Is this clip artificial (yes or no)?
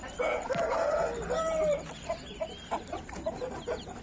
no